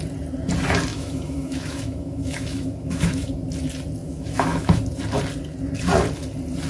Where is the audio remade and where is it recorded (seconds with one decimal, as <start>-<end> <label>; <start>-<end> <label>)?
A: 0.0-0.9 recorded; 0.9-3.3 remade; 3.3-4.0 recorded; 4.0-4.8 remade; 4.8-6.7 recorded